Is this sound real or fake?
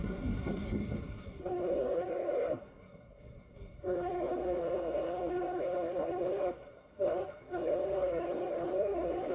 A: fake